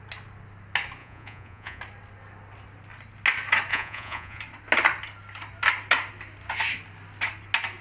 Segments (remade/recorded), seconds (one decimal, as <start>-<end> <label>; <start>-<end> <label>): 0.0-1.0 recorded; 1.0-1.8 remade; 1.8-3.7 recorded; 3.7-4.4 remade; 4.4-7.8 recorded

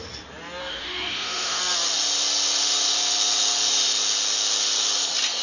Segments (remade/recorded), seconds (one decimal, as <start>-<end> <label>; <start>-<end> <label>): 0.0-0.6 recorded; 0.6-1.6 remade; 1.6-5.4 recorded

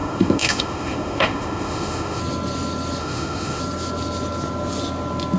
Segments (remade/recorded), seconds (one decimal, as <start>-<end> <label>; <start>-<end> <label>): 0.0-2.2 remade; 2.2-3.0 recorded; 3.0-3.6 remade; 3.6-5.4 recorded